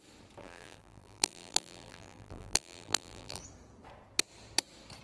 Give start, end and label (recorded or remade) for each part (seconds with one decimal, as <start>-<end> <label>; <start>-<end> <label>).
0.0-0.4 recorded; 0.4-3.4 remade; 3.4-5.0 recorded